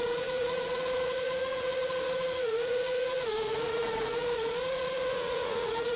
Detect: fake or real fake